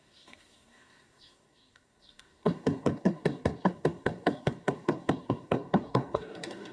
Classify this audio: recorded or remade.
remade